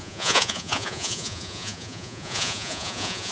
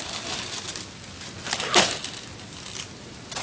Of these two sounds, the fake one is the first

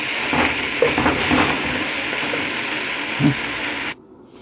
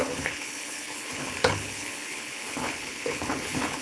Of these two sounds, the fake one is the second